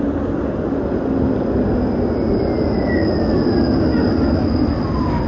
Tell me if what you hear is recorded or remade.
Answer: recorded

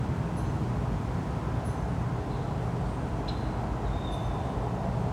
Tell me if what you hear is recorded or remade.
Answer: recorded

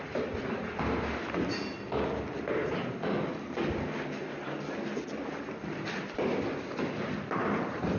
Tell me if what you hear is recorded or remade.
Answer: recorded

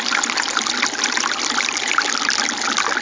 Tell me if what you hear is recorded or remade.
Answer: recorded